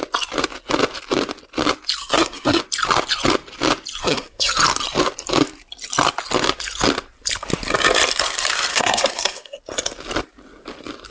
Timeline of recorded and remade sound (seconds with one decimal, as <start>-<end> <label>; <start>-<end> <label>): 0.0-2.0 recorded; 2.0-2.6 remade; 2.6-4.0 recorded; 4.0-4.5 remade; 4.5-8.7 recorded; 8.7-9.6 remade; 9.6-11.1 recorded